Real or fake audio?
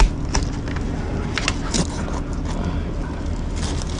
real